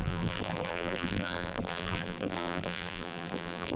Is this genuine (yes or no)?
no